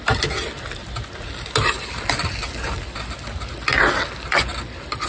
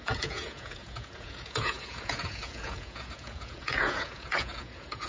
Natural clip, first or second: first